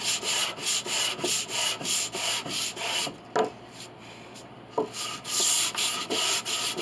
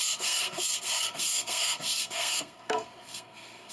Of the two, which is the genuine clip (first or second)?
first